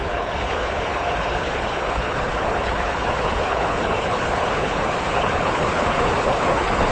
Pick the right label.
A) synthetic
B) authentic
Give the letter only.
A